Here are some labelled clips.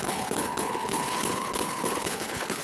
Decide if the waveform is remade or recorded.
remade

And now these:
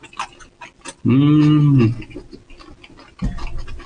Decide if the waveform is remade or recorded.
recorded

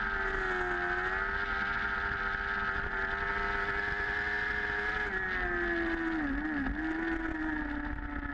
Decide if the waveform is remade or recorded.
recorded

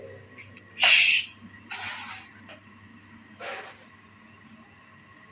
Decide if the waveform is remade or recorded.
recorded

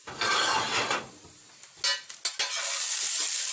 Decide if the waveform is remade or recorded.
recorded